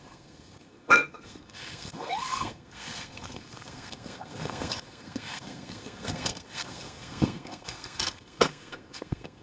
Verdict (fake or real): fake